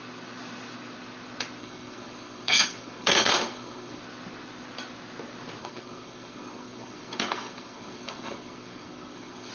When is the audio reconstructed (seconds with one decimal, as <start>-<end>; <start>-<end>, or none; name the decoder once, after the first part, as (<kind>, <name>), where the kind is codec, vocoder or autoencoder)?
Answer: 1.6-4.0 (codec, SNAC); 5.6-9.5